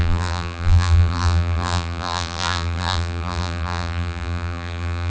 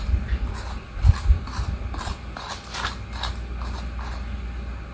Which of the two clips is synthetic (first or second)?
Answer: first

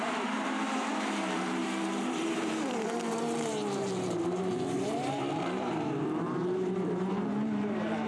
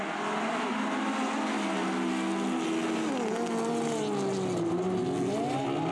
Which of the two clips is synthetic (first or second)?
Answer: first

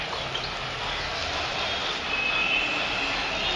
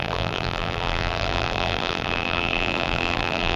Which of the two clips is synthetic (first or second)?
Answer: second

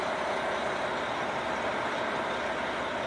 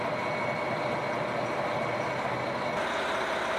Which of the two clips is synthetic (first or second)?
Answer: first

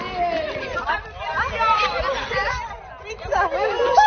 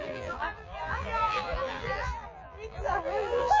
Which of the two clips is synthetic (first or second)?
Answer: second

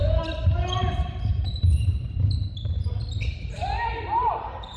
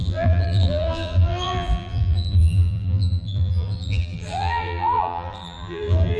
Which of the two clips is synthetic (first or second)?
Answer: second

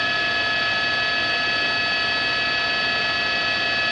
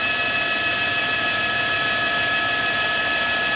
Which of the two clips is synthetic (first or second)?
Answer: second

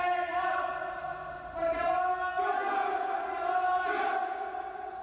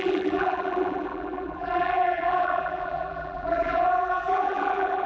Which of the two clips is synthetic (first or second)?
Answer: second